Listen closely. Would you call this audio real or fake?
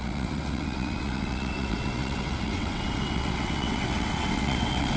fake